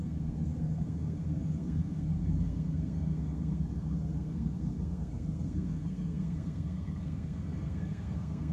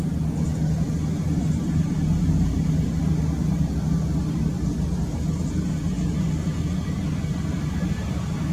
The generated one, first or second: first